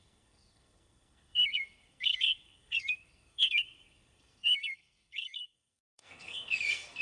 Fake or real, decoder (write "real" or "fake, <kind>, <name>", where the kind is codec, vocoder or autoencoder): fake, codec, SNAC